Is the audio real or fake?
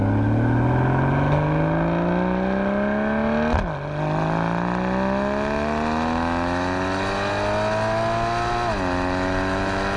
real